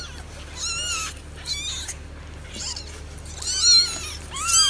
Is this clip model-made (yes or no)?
no